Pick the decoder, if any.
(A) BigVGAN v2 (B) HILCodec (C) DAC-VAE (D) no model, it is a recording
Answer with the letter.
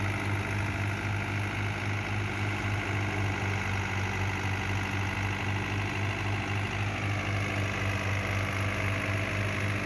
D